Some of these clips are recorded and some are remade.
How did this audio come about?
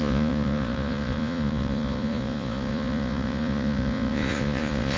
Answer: remade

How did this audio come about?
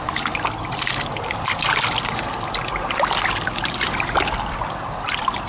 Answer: recorded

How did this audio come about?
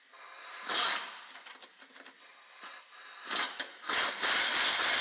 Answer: recorded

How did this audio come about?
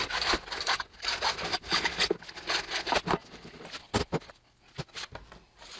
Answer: recorded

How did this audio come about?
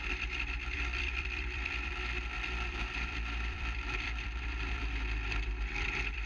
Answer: remade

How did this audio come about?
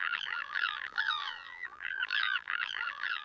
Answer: remade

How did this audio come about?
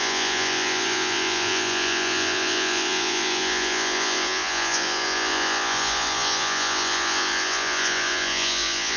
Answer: remade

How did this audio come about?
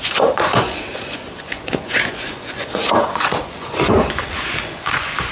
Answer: remade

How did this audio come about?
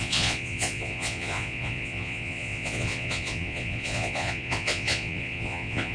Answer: remade